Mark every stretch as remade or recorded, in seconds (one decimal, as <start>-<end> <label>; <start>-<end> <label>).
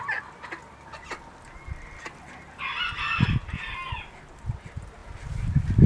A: 0.0-5.9 recorded